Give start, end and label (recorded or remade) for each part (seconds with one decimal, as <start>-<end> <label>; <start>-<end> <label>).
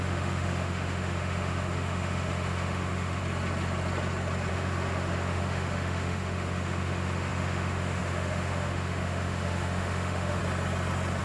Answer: 0.0-3.2 remade; 3.2-4.5 recorded; 4.5-10.4 remade; 10.4-11.2 recorded